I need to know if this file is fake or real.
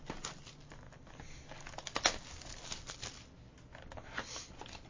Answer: real